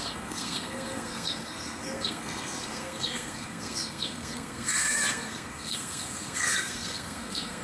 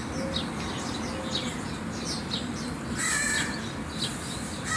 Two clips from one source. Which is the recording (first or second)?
second